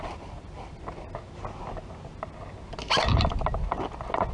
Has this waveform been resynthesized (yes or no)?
no